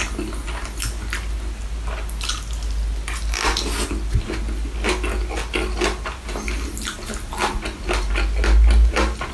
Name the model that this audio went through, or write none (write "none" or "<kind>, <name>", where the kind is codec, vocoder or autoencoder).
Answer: none